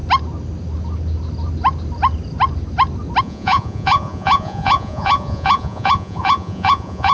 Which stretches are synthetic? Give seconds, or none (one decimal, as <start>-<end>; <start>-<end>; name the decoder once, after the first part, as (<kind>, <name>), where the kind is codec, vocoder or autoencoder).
3.2-7.1 (vocoder, Vocos)